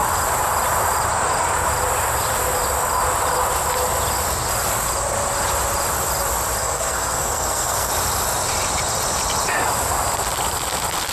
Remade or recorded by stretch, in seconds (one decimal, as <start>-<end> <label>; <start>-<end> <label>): 0.0-6.6 recorded; 6.6-7.9 remade; 7.9-11.1 recorded